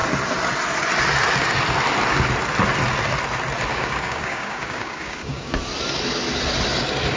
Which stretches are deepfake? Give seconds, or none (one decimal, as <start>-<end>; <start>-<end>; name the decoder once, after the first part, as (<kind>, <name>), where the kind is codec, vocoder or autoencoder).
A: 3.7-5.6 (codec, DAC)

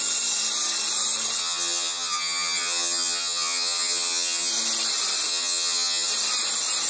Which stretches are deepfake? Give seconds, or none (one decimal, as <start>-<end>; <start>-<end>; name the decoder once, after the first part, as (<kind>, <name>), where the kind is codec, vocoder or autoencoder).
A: 1.4-4.5 (vocoder, HiFi-GAN); 5.3-6.1

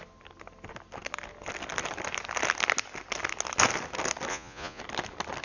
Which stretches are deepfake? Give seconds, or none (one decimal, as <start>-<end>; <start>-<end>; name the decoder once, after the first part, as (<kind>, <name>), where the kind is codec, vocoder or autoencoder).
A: 4.3-4.8 (vocoder, Vocos)

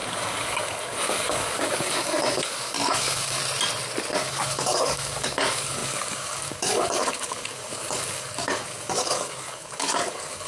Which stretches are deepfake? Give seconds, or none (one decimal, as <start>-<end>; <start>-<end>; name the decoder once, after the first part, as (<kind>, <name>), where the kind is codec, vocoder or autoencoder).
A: 0.0-3.4 (codec, DAC); 4.1-10.5